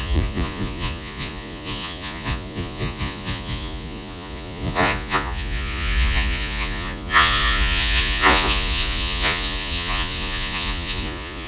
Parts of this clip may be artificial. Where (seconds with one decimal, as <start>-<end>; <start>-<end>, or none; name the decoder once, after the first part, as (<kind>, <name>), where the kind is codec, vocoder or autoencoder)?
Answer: 0.0-11.5 (vocoder, Vocos)